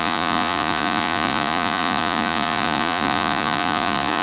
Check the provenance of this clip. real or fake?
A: fake